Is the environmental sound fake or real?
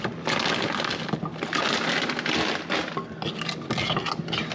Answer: real